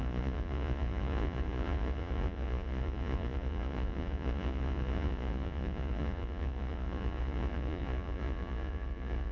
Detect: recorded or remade remade